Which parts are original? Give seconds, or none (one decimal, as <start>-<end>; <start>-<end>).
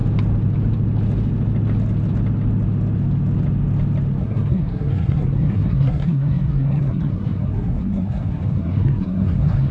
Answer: 0.0-4.2